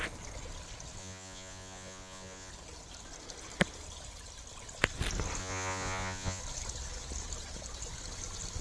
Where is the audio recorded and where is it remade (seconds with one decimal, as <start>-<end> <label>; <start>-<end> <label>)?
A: 0.0-1.0 recorded; 1.0-2.5 remade; 2.5-5.4 recorded; 5.4-6.4 remade; 6.4-8.6 recorded

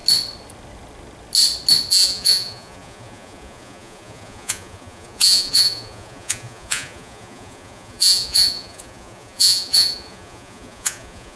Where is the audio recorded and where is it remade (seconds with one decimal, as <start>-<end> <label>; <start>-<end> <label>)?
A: 0.0-1.9 recorded; 1.9-11.4 remade

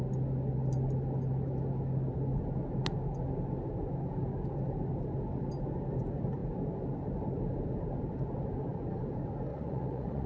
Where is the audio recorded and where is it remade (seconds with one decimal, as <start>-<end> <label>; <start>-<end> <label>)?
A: 0.0-9.5 recorded; 9.5-10.3 remade